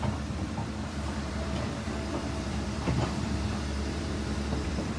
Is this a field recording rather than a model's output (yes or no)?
no